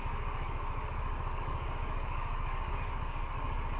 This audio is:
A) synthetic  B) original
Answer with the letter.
A